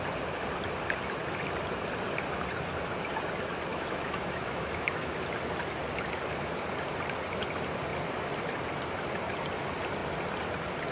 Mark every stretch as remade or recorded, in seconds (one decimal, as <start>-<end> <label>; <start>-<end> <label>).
0.0-3.7 recorded; 3.7-5.1 remade; 5.1-10.9 recorded